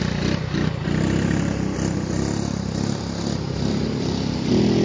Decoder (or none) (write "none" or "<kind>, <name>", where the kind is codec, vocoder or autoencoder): none